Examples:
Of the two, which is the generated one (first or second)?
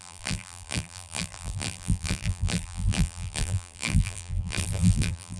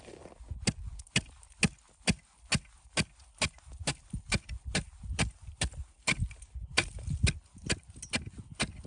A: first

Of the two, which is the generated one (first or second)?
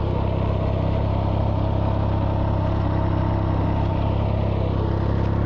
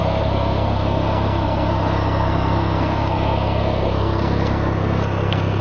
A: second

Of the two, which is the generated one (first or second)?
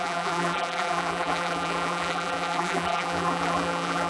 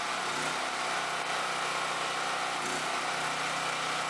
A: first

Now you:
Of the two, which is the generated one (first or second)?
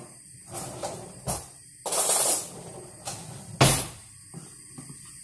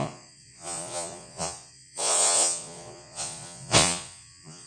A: second